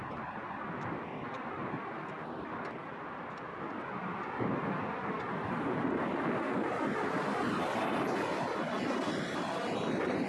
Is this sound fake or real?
real